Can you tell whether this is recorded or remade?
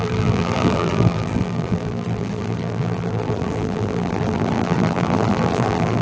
remade